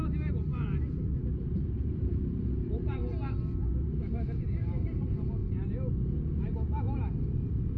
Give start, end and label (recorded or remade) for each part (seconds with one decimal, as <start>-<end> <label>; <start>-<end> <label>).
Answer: 0.0-3.0 remade; 3.0-4.4 recorded; 4.4-5.4 remade; 5.4-7.8 recorded